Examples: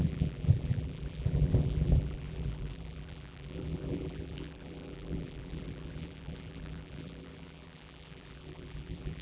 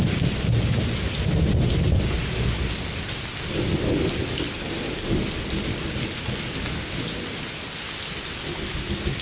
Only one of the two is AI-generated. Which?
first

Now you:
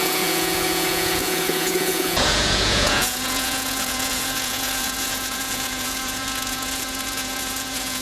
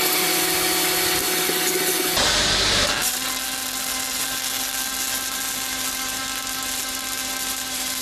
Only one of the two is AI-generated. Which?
first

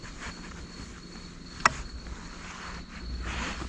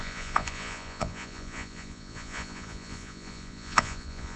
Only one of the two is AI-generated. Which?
second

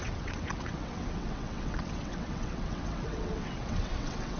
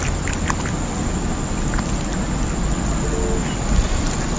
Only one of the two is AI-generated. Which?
first